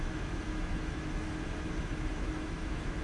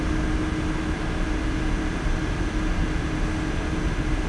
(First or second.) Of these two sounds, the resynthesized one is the first